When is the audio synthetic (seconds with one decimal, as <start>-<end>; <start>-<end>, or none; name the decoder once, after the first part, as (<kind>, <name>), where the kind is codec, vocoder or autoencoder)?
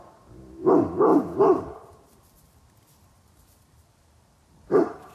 1.1-2.2 (vocoder, BigVGAN v2); 3.0-5.1